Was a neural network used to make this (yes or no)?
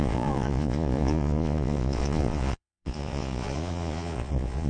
yes